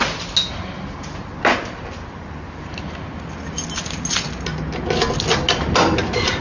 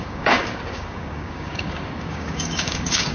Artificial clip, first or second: second